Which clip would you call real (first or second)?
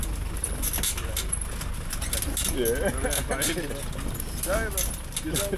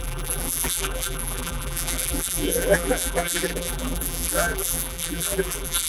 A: first